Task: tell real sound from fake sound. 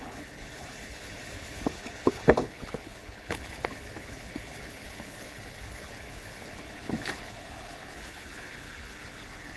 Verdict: fake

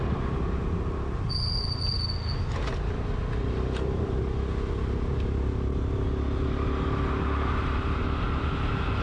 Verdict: real